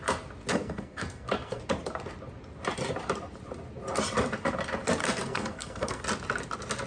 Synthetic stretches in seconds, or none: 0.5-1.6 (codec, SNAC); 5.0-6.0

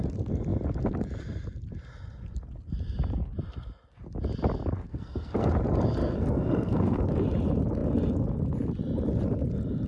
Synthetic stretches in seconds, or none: 4.9-5.5 (codec, SNAC); 6.0-7.0